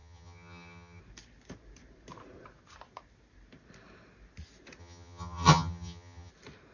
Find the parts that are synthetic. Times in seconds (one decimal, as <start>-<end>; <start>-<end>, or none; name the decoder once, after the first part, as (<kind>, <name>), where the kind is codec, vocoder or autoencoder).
0.0-1.0 (vocoder, HiFi-GAN); 4.8-6.3